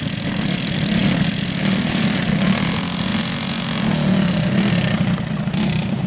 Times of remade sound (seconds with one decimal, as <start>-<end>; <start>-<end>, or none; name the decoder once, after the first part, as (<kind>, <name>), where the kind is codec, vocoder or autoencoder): 0.0-1.0 (vocoder, BigVGAN v2); 1.9-3.1; 4.7-6.1